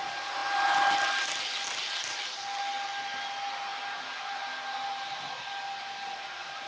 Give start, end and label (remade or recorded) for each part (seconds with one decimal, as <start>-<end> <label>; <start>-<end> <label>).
0.0-0.4 recorded; 0.4-2.6 remade; 2.6-6.7 recorded